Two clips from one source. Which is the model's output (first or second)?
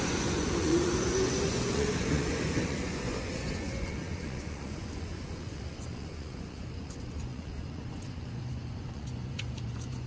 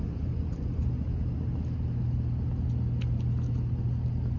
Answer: first